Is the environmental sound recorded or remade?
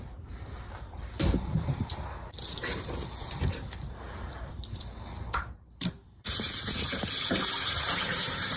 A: remade